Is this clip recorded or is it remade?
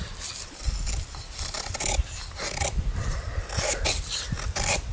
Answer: recorded